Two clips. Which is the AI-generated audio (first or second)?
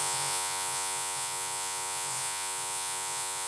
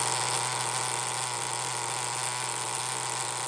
first